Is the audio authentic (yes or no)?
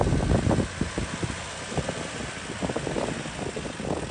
yes